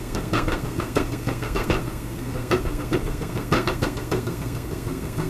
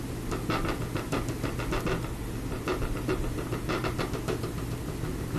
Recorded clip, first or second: second